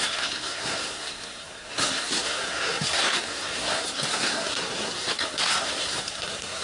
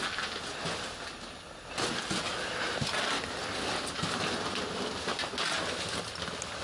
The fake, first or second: first